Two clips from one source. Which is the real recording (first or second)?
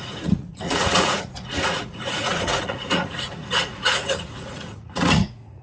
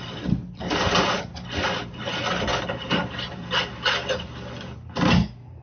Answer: second